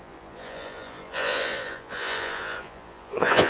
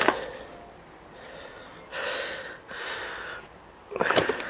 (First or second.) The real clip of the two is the second